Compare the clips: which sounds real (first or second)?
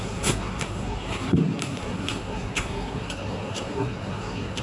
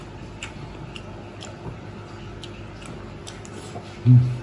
second